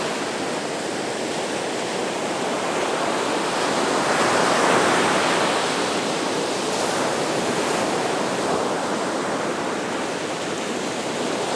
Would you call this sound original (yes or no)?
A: yes